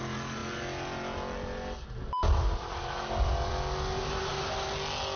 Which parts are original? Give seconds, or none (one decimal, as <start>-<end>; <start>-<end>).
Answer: 0.0-5.2